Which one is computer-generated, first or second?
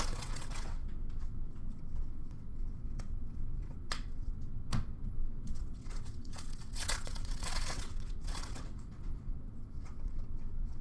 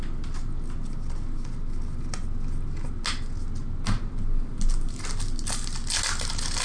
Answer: first